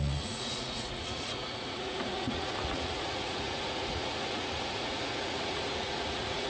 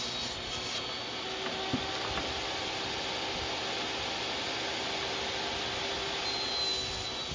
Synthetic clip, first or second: first